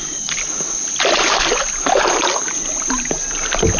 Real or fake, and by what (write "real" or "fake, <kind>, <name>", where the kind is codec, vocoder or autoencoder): real